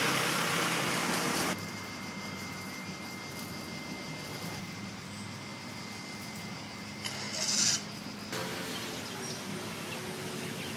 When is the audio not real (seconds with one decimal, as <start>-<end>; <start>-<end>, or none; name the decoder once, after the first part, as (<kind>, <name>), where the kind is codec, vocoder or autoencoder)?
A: 1.0-2.6 (vocoder, BigVGAN v2); 4.3-5.0